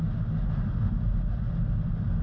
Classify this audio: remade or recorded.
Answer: recorded